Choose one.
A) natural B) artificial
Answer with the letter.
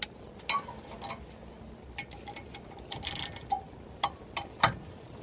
A